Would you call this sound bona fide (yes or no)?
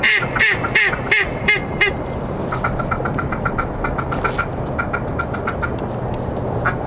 yes